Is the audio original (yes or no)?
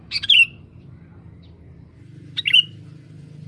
no